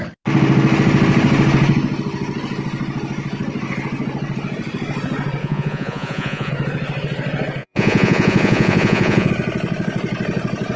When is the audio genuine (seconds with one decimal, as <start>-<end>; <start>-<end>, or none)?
0.0-5.4; 6.5-7.6; 9.3-10.8